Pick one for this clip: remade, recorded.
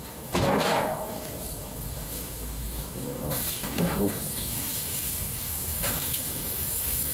remade